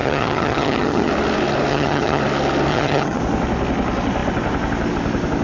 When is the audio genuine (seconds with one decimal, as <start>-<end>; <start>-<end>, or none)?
1.1-1.7; 2.2-2.7; 3.2-5.4